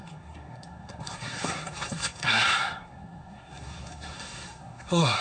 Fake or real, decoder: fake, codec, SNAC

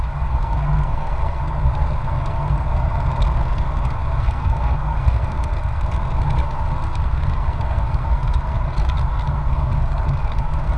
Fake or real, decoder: fake, codec, SNAC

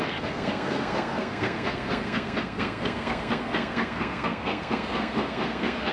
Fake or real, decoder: fake, codec, SNAC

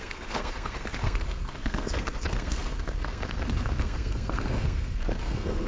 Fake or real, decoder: fake, codec, SNAC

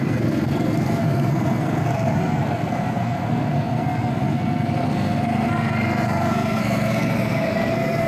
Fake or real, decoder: fake, codec, SNAC